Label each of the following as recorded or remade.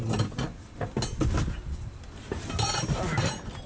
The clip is recorded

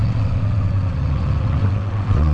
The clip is remade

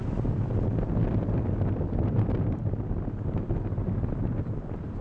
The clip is recorded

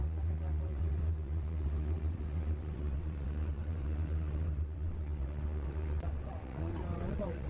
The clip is remade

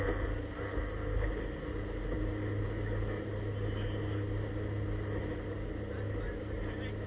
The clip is recorded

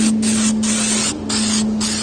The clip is recorded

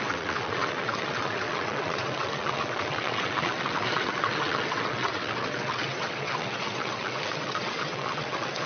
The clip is remade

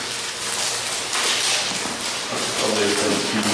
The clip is recorded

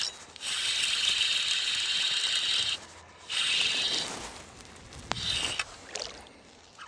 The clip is recorded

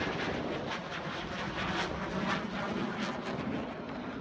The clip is recorded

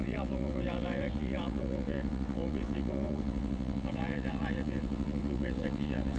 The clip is remade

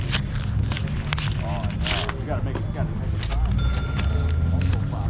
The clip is recorded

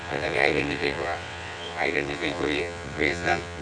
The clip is remade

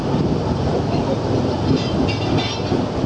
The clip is recorded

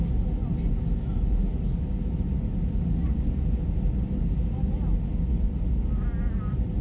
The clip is recorded